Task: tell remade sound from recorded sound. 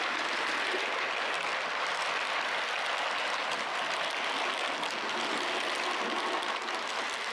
recorded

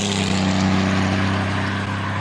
recorded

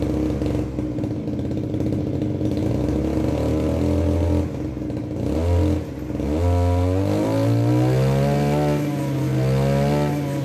recorded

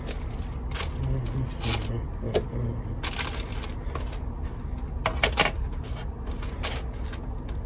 recorded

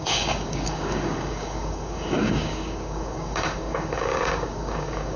remade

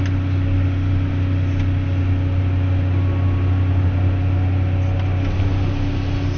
recorded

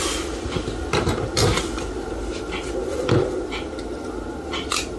recorded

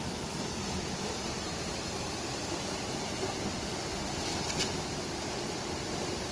recorded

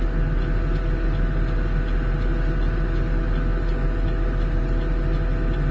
recorded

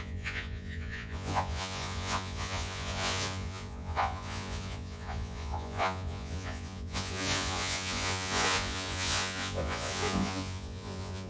remade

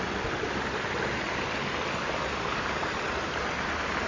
recorded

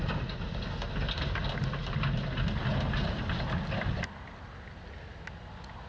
recorded